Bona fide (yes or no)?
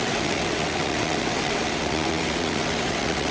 no